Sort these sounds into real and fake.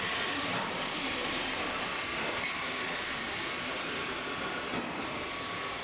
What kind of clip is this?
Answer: real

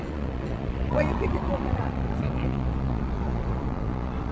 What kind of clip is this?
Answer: fake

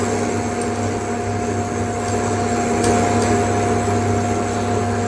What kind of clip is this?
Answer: real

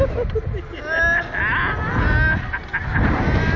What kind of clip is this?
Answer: real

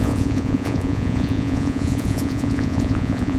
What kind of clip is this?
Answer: fake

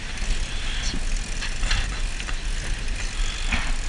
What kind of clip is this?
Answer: real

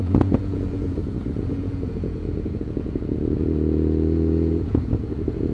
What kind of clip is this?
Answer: fake